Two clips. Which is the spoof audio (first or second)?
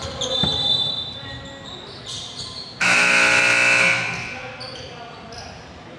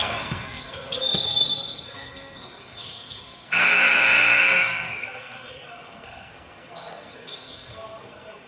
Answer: second